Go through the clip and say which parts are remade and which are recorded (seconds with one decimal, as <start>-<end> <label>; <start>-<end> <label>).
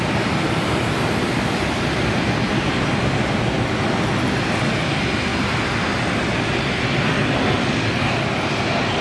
0.0-5.3 recorded; 5.3-9.0 remade